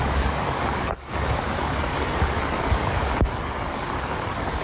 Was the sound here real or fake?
fake